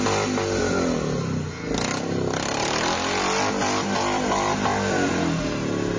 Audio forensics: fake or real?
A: real